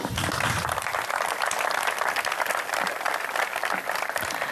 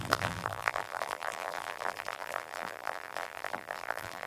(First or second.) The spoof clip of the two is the second